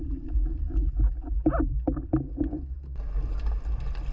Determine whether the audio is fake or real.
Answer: real